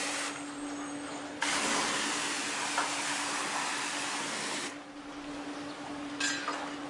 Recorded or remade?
recorded